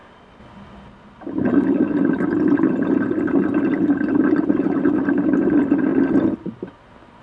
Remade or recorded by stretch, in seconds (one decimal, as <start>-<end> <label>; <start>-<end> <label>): 0.0-7.2 recorded